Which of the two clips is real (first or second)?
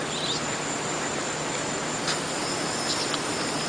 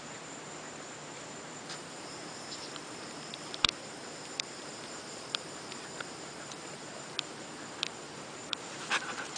first